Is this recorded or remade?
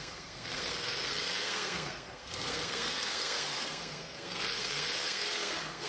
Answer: remade